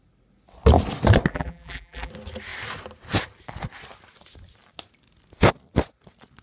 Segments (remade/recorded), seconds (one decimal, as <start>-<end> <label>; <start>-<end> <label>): 0.0-1.3 recorded; 1.3-2.1 remade; 2.1-6.4 recorded